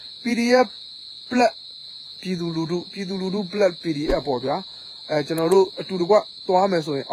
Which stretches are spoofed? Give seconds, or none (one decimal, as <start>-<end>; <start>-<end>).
0.0-1.4; 1.8-6.1